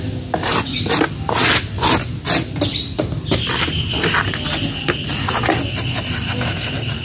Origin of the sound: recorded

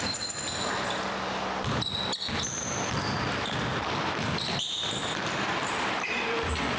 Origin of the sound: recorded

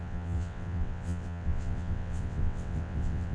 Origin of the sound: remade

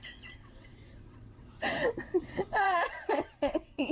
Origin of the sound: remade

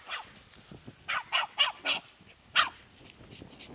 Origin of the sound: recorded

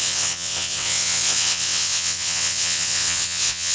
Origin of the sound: remade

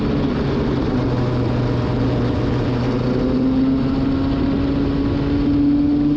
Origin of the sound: recorded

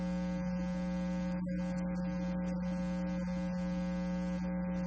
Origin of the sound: recorded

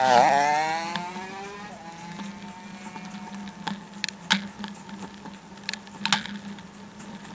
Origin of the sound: recorded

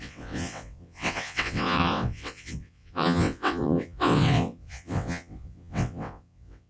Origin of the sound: remade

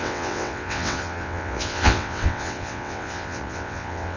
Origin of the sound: remade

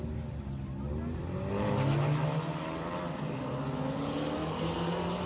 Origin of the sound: recorded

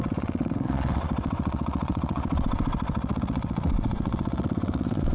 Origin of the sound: remade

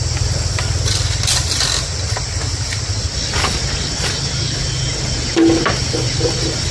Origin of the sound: recorded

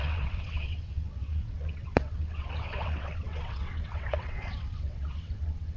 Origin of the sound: remade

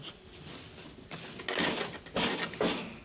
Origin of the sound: recorded